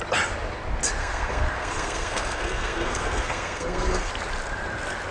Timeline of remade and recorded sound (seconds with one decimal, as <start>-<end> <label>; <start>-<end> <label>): 0.0-1.0 recorded; 1.0-4.1 remade; 4.1-5.1 recorded